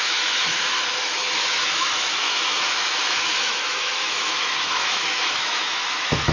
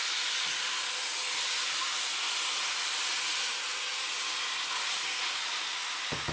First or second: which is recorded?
second